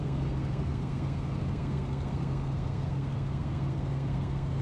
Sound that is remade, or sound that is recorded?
remade